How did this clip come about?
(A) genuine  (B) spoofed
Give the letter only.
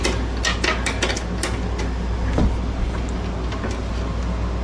A